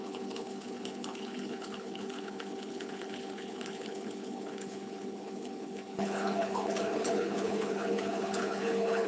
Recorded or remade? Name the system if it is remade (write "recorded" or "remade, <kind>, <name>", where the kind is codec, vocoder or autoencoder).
remade, codec, HILCodec